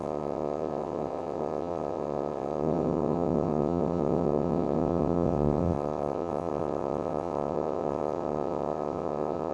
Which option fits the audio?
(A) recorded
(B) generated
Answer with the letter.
B